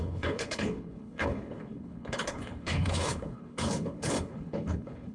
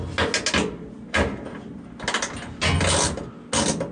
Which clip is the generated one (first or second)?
first